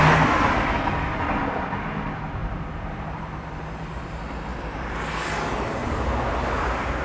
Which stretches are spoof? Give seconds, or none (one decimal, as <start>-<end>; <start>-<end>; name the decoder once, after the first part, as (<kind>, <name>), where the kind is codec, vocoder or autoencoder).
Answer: 2.4-3.7 (vocoder, BigVGAN v2); 4.5-5.1